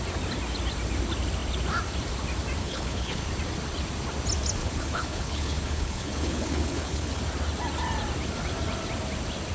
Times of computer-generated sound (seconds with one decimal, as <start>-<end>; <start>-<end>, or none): 2.6-3.3; 4.6-7.2